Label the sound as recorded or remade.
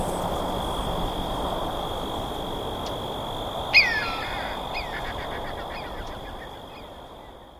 recorded